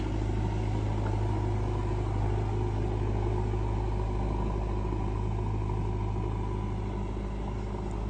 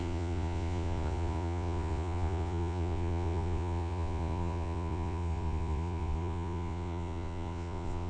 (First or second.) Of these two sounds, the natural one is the first